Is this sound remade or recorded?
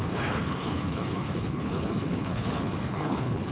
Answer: remade